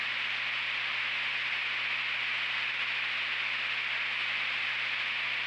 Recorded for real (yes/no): yes